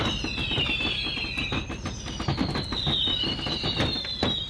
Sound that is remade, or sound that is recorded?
recorded